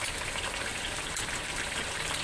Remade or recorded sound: remade